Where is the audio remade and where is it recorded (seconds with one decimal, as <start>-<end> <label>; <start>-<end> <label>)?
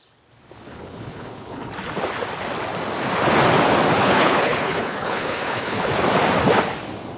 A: 0.0-0.7 recorded; 0.7-1.7 remade; 1.7-4.0 recorded; 4.0-5.9 remade; 5.9-7.2 recorded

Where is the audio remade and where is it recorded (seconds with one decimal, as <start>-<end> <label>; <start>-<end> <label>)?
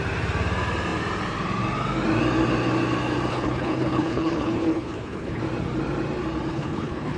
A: 0.0-3.3 recorded; 3.3-5.4 remade; 5.4-6.5 recorded; 6.5-7.2 remade